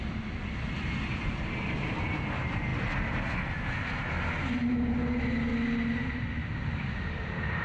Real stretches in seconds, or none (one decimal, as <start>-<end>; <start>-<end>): 0.0-7.6